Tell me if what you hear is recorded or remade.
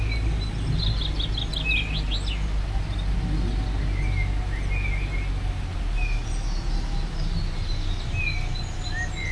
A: recorded